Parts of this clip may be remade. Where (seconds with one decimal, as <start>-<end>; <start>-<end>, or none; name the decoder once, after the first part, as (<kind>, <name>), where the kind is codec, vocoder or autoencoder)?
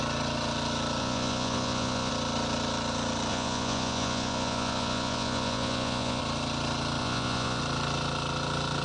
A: 1.0-2.1 (vocoder, Vocos); 3.3-6.2; 7.0-7.6